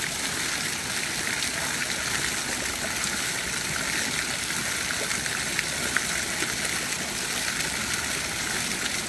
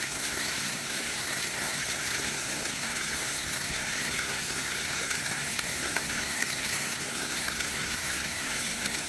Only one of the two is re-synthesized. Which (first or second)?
second